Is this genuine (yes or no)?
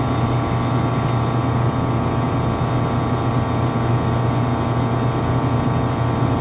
yes